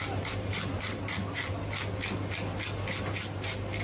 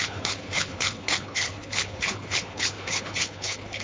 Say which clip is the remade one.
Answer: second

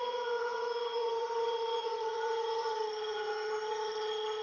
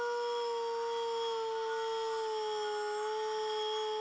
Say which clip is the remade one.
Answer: first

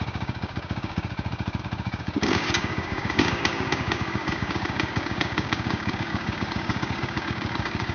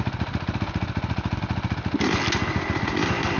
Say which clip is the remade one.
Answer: first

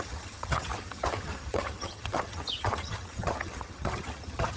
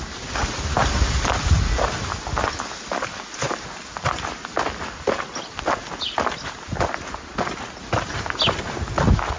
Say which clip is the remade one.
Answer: first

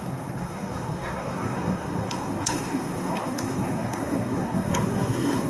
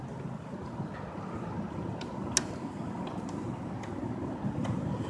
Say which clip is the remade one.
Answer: first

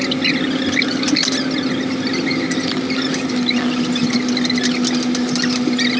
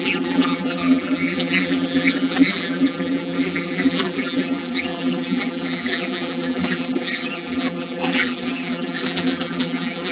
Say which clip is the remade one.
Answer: second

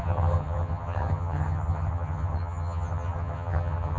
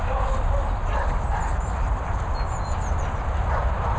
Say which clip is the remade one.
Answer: first